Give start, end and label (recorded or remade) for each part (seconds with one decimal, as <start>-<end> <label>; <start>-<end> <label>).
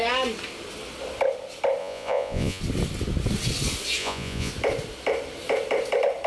0.0-1.8 recorded; 1.8-2.6 remade; 2.6-4.0 recorded; 4.0-4.5 remade; 4.5-6.3 recorded